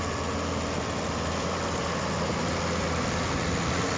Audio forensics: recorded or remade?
recorded